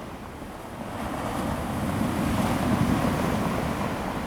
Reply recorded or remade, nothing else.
recorded